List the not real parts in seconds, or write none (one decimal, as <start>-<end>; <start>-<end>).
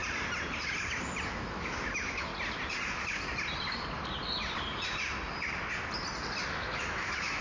1.3-2.3; 6.4-7.4